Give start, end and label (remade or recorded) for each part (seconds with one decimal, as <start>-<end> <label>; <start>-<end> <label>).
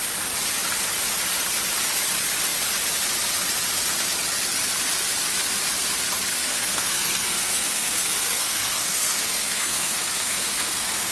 0.0-6.3 recorded; 6.3-11.1 remade